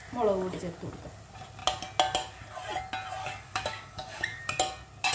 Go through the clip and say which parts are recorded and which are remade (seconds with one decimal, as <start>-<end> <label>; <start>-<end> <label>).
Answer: 0.0-3.2 recorded; 3.2-4.4 remade; 4.4-5.1 recorded